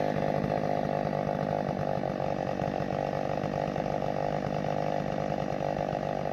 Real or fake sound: real